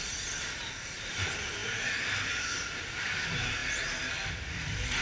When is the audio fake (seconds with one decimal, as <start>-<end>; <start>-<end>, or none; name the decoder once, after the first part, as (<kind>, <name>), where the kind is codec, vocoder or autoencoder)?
none